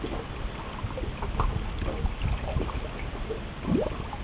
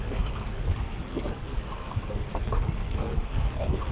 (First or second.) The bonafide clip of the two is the first